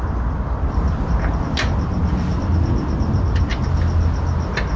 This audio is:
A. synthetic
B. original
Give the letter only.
B